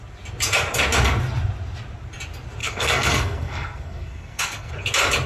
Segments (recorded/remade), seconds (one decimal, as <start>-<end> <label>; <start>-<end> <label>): 0.0-2.6 recorded; 2.6-4.7 remade; 4.7-5.3 recorded